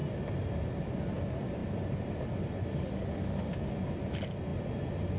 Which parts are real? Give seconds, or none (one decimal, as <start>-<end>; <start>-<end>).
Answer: 0.0-2.7; 3.7-5.2

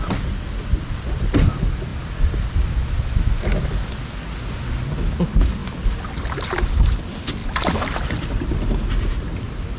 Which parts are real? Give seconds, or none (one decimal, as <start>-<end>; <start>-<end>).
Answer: 0.0-9.8

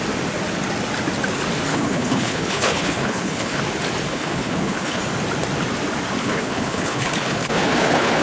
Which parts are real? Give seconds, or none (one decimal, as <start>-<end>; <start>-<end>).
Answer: 0.0-1.7; 3.6-4.1; 5.0-6.2

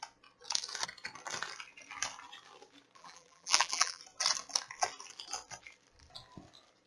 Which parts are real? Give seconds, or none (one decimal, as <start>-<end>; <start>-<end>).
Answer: 0.0-3.0; 4.0-6.9

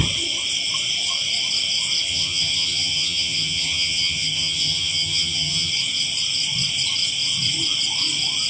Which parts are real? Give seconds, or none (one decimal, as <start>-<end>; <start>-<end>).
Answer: 0.0-2.1; 5.7-8.5

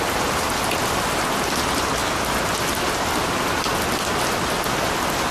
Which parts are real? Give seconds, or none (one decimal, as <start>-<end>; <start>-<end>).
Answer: 0.0-5.3

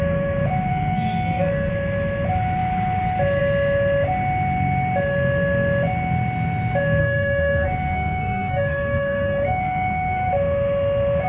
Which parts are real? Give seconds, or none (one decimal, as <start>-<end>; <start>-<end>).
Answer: 0.0-0.7; 1.7-7.0; 10.3-11.3